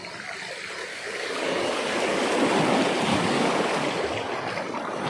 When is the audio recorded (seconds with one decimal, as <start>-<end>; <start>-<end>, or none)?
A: 0.0-0.9; 2.3-3.1; 3.9-5.1